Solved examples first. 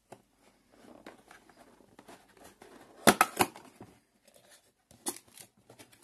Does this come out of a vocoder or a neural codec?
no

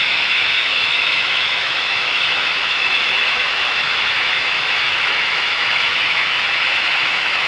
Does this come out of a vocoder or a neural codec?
yes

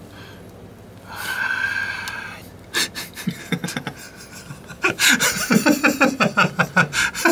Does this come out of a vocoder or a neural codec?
no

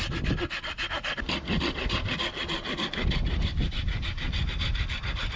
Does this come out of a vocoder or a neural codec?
no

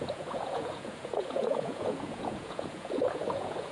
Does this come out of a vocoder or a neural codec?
yes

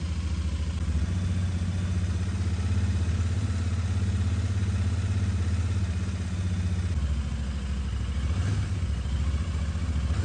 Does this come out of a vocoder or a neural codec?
no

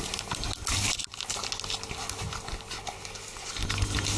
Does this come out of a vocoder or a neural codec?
no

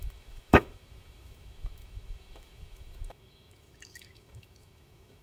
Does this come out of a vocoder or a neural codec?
yes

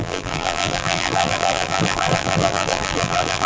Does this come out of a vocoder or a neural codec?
yes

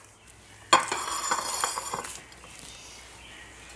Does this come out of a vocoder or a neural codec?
no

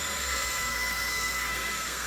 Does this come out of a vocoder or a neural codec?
yes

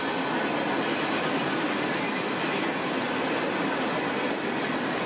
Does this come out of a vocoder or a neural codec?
no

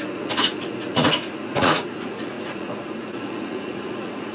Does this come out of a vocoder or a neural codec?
yes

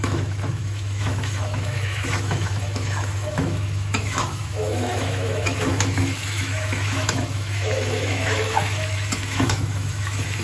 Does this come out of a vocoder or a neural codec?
yes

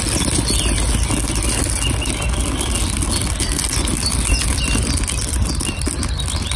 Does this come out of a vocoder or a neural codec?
no